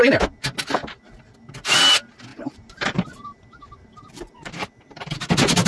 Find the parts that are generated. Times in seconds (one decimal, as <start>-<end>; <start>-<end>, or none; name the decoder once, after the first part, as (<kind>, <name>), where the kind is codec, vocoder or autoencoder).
2.3-5.3 (vocoder, BigVGAN v2)